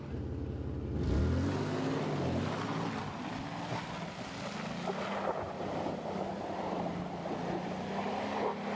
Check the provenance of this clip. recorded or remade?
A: recorded